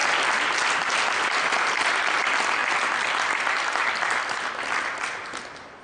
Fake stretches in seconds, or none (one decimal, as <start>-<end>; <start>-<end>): 1.2-5.8